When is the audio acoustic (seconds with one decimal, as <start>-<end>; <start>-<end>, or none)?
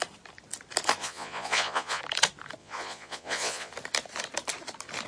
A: 0.0-1.0; 2.0-2.6; 3.7-5.1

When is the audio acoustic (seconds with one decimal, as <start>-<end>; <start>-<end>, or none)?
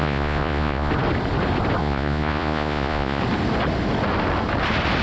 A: 0.9-1.8; 3.2-5.0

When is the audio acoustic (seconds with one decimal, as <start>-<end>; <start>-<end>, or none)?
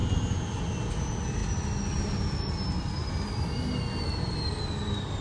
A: 0.0-5.2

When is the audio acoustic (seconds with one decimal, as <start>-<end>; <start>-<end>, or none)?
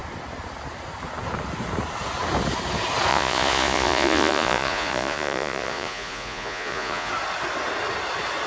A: 0.0-3.1; 7.1-8.5